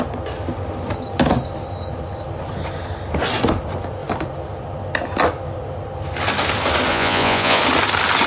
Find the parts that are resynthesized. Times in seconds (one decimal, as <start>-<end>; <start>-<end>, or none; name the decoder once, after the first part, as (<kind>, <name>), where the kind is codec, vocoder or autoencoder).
6.9-7.6 (vocoder, Vocos)